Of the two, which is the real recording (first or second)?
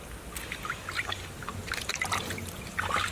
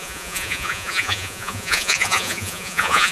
first